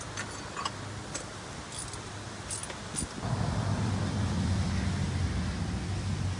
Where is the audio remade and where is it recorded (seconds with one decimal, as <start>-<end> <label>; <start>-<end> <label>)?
0.0-6.4 recorded